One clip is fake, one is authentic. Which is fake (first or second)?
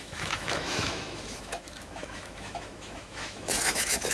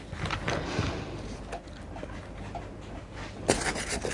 first